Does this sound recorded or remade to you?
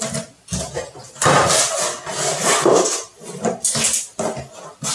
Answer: recorded